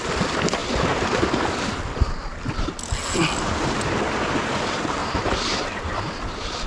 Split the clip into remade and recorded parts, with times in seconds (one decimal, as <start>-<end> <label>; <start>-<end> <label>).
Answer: 0.0-5.0 recorded; 5.0-5.9 remade; 5.9-6.7 recorded